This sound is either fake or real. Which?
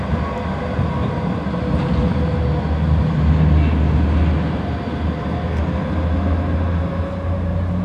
real